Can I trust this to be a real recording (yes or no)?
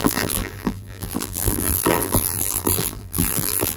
no